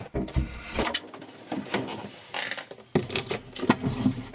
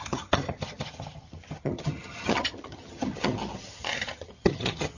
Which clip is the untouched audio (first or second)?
first